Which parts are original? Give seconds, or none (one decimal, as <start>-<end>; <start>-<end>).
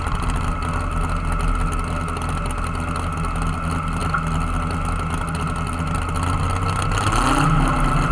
0.0-8.1